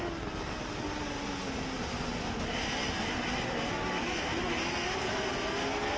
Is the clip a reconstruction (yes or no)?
no